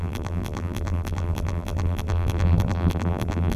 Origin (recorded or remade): remade